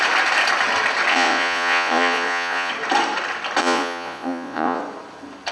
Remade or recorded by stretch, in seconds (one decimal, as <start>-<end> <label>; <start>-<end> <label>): 0.0-1.1 recorded; 1.1-2.7 remade; 2.7-3.6 recorded; 3.6-4.8 remade; 4.8-5.5 recorded